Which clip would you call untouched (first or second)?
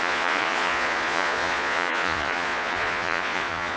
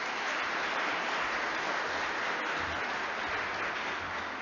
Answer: second